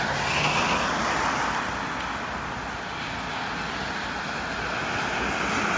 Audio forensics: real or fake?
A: real